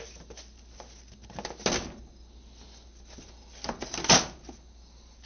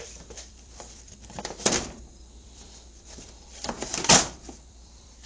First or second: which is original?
first